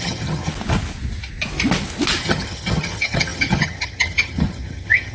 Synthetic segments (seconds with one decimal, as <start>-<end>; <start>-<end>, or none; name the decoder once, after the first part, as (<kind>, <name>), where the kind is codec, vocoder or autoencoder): 0.0-0.5 (vocoder, HiFi-GAN); 2.2-5.1